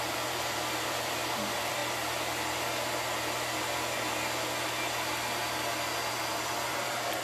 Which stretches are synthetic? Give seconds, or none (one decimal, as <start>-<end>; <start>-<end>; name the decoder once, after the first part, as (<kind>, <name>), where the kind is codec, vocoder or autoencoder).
0.0-1.8 (vocoder, BigVGAN v2); 6.1-7.2